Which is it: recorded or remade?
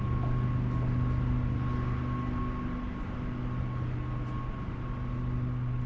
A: recorded